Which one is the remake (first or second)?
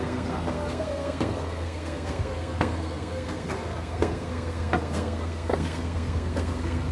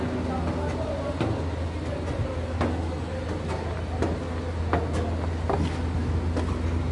first